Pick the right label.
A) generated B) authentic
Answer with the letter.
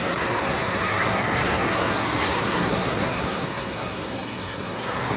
A